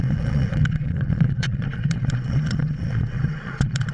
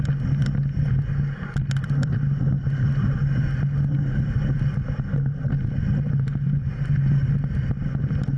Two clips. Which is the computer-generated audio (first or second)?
first